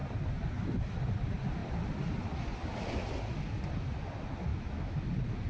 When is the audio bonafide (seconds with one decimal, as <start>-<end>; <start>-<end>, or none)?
0.0-4.5; 5.0-5.5